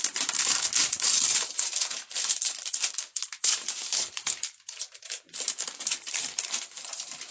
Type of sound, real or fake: fake